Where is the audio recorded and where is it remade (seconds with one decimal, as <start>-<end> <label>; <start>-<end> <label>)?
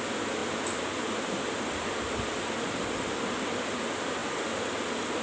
0.0-5.2 recorded